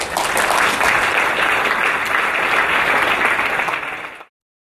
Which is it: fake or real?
real